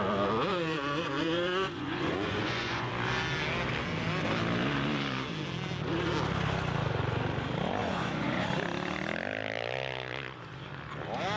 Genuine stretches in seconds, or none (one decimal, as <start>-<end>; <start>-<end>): 0.0-0.5; 2.9-7.8; 8.5-11.4